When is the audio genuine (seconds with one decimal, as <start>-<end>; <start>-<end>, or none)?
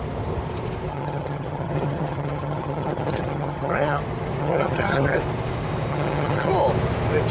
0.0-0.9; 4.0-4.4; 5.2-5.9; 6.5-7.3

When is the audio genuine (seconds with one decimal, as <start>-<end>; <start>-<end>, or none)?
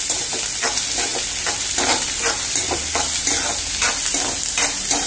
0.0-5.1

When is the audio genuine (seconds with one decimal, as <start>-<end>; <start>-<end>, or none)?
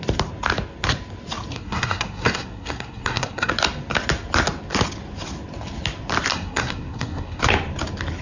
0.0-1.5; 3.5-6.3; 7.4-8.2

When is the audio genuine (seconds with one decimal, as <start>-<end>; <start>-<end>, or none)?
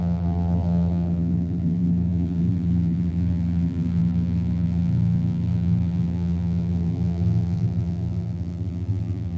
none